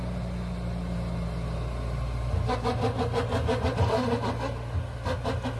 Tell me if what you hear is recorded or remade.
recorded